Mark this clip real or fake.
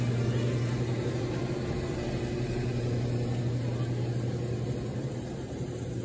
real